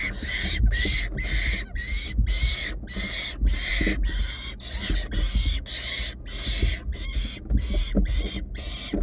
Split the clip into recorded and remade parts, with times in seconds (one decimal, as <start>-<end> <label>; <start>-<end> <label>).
0.0-9.0 recorded